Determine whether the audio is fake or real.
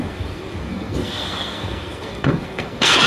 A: fake